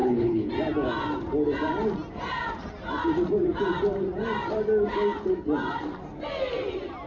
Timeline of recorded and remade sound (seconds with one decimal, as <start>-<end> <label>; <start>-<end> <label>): 0.0-0.5 remade; 0.5-7.1 recorded